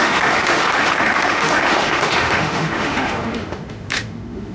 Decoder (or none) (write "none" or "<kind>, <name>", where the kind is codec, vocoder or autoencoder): autoencoder, DAC-VAE